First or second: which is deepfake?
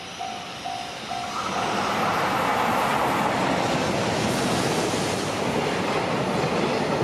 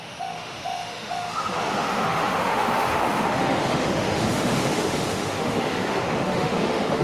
second